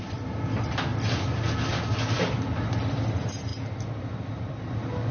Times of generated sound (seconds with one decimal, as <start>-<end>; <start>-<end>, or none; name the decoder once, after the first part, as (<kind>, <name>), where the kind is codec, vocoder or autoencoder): none